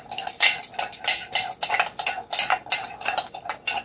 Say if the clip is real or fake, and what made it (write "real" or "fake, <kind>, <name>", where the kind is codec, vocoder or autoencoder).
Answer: real